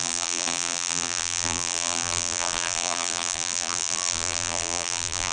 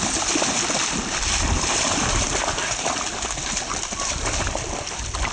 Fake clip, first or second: first